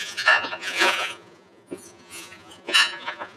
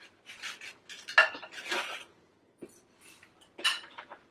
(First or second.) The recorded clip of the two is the second